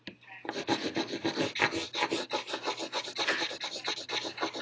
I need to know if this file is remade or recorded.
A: recorded